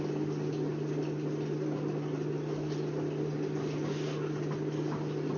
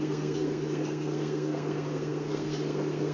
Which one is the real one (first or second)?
first